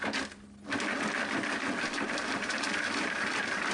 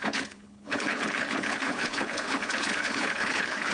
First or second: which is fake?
second